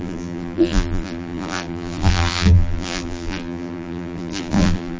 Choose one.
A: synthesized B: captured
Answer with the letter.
A